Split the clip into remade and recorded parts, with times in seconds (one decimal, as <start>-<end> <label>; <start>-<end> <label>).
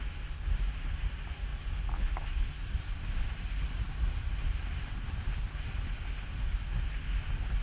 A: 0.0-7.6 recorded